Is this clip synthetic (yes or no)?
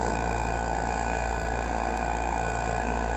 yes